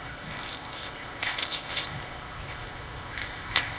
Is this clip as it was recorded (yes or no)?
no